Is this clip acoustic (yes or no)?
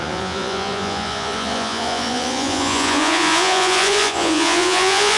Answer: no